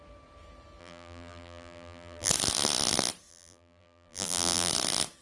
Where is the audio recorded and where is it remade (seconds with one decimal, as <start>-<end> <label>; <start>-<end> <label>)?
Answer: 0.0-0.8 recorded; 0.8-2.3 remade; 2.3-3.3 recorded; 3.3-4.7 remade; 4.7-5.2 recorded